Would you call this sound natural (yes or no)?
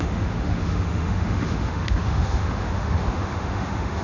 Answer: no